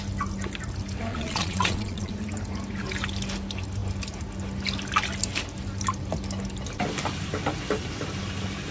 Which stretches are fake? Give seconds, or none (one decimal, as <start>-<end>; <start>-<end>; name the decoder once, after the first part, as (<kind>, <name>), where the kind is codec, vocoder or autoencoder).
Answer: 1.1-2.1 (vocoder, Vocos)